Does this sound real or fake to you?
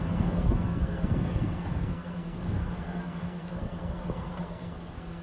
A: fake